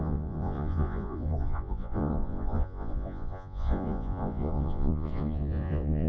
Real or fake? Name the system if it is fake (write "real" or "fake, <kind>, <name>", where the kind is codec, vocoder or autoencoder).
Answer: fake, vocoder, Vocos